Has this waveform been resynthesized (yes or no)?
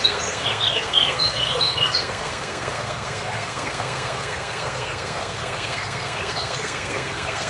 yes